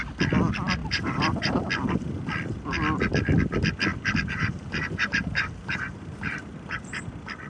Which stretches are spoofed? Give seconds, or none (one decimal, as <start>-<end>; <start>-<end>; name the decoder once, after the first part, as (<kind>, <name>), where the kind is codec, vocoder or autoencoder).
0.8-1.7 (vocoder, BigVGAN v2); 3.9-7.0